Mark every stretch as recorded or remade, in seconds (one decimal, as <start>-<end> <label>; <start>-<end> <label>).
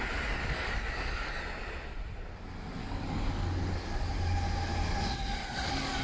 0.0-0.4 recorded; 0.4-1.4 remade; 1.4-2.8 recorded; 2.8-4.1 remade; 4.1-5.4 recorded; 5.4-6.0 remade